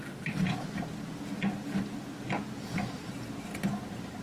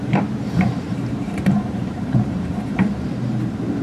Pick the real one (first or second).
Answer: first